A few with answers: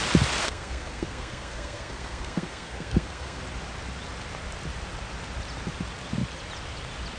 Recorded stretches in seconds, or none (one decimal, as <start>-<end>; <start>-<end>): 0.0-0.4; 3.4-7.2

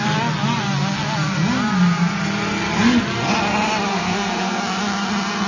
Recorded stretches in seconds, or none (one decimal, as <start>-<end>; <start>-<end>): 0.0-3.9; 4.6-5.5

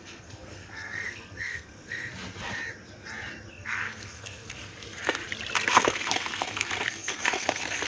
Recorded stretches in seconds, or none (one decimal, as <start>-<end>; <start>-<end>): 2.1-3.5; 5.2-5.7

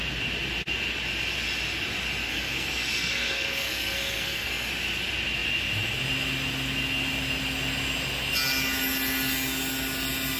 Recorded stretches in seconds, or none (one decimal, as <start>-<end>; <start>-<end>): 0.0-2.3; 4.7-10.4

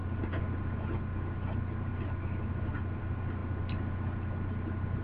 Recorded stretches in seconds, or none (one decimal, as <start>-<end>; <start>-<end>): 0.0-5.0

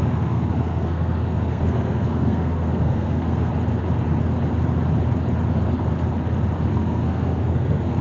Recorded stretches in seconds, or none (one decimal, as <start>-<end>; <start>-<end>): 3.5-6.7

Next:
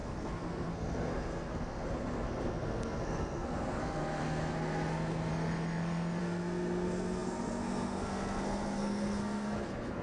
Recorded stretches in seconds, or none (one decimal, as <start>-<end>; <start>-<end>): 5.3-6.2

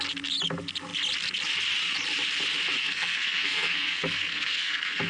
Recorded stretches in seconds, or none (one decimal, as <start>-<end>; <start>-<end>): 0.0-2.8